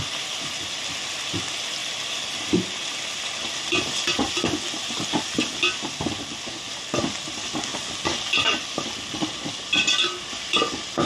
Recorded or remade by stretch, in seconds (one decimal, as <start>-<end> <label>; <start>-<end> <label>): 0.0-1.8 recorded; 1.8-4.3 remade; 4.3-11.1 recorded